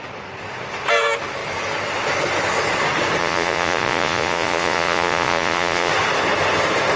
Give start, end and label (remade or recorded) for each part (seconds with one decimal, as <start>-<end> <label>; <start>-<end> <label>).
0.0-3.2 recorded; 3.2-5.9 remade; 5.9-7.0 recorded